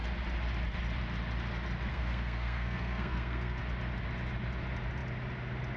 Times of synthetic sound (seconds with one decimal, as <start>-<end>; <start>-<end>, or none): 1.9-3.6